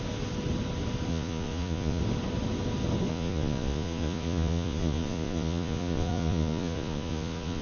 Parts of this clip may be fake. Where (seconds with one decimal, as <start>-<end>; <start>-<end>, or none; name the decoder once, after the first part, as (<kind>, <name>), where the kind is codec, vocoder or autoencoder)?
1.1-2.0 (vocoder, Vocos); 3.1-7.6